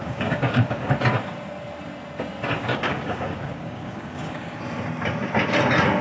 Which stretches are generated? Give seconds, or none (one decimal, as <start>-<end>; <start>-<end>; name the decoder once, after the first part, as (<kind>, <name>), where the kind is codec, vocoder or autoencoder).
0.0-0.9 (codec, DAC); 2.7-4.6